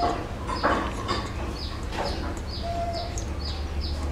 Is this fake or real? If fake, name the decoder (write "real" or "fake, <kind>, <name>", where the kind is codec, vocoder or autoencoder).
real